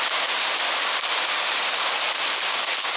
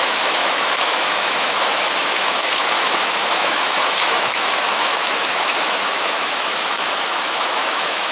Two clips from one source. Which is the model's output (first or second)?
second